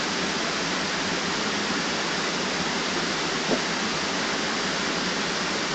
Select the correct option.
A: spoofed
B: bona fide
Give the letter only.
B